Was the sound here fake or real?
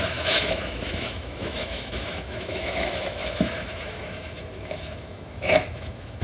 fake